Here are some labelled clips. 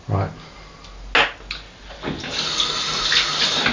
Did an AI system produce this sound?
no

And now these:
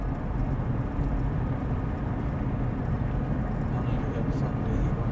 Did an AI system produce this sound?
no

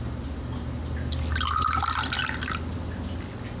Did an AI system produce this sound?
no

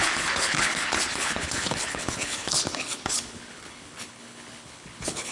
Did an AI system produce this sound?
yes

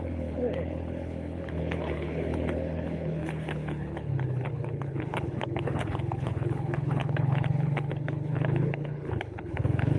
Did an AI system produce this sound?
yes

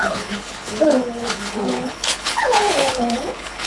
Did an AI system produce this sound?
yes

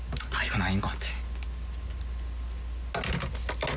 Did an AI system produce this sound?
no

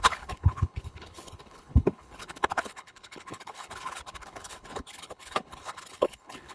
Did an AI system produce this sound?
yes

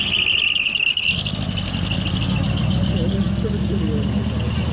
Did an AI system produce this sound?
no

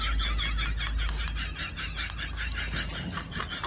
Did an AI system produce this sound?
no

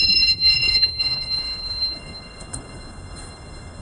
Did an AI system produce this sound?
yes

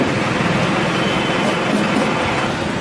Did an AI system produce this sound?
no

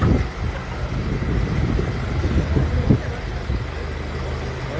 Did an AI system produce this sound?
no